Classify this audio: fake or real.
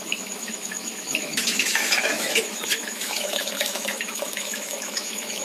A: fake